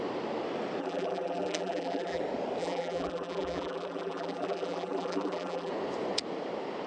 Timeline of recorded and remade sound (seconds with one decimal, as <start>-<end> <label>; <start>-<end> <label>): 0.0-0.8 recorded; 0.8-2.2 remade; 2.2-2.6 recorded; 2.6-5.7 remade; 5.7-6.9 recorded